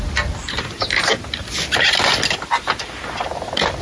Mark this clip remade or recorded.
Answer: recorded